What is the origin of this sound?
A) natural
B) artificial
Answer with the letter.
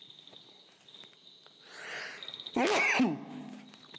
A